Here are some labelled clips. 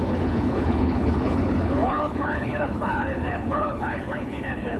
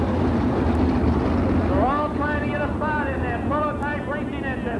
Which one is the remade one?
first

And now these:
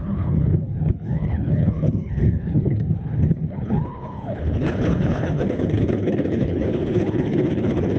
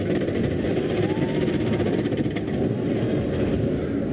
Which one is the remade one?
first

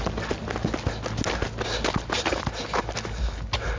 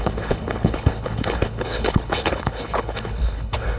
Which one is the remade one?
second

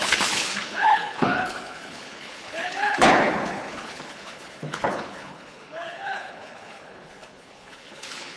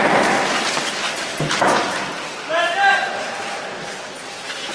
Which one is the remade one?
first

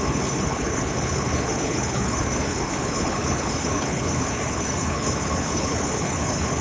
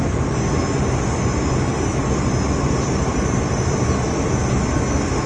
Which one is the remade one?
first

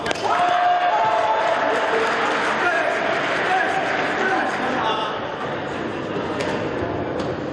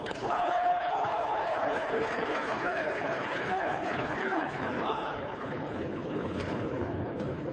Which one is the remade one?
second